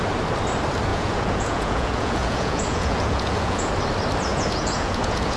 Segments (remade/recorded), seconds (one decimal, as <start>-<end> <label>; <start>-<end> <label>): 0.0-0.9 recorded; 0.9-3.7 remade; 3.7-4.3 recorded; 4.3-5.4 remade